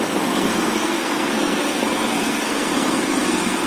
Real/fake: fake